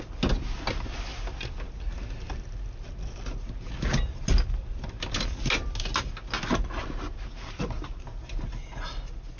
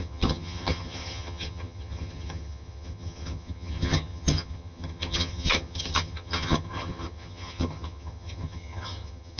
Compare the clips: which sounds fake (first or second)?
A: second